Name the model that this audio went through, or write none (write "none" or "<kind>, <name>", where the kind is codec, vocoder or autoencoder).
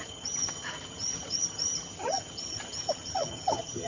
vocoder, HiFi-GAN